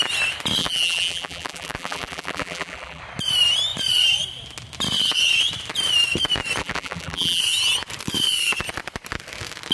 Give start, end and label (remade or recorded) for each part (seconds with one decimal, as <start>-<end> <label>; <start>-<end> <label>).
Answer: 0.0-0.6 recorded; 0.6-3.0 remade; 3.0-6.6 recorded; 6.6-7.4 remade; 7.4-9.7 recorded